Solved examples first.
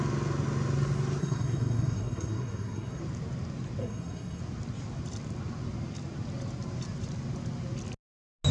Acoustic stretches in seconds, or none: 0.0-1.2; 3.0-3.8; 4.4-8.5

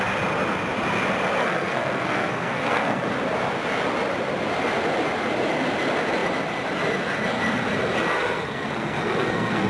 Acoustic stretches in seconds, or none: 0.0-1.4; 3.1-8.1

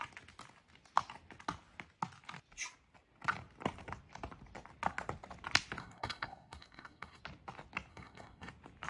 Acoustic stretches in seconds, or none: 0.0-5.8; 7.2-7.9; 8.5-8.9

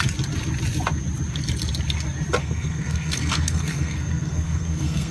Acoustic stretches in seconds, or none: 0.0-2.4